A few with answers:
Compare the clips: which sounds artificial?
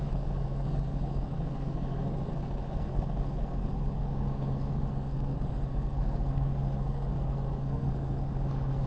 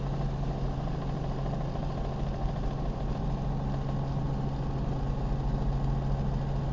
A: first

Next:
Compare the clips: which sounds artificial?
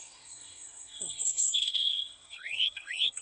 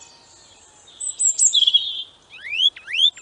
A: first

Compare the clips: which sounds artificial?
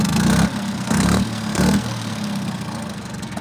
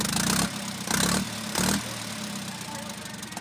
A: first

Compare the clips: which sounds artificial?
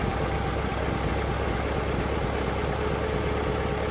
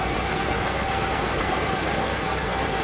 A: second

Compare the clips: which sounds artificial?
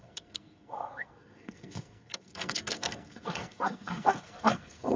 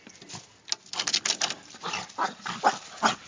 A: first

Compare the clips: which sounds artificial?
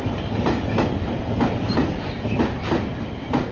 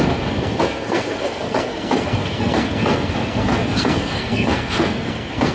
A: second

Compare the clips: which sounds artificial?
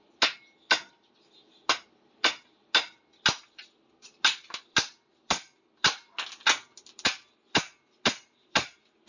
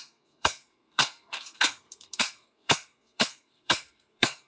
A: second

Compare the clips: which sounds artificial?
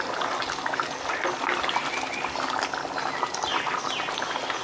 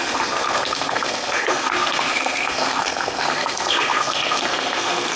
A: second